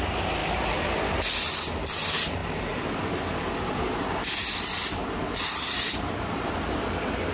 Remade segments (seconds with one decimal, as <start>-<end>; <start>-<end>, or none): 0.4-1.0; 2.4-3.1; 5.0-6.5